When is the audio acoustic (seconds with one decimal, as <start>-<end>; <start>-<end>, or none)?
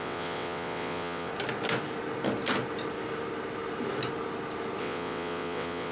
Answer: 1.3-4.8